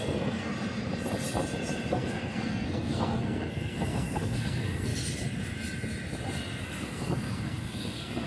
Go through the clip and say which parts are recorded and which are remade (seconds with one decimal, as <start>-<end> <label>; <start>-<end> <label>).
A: 0.0-0.5 remade; 0.5-1.9 recorded; 1.9-4.9 remade; 4.9-6.6 recorded; 6.6-8.3 remade